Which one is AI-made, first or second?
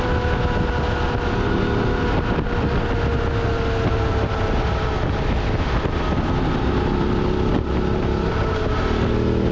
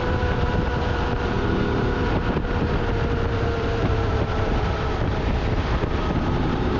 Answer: second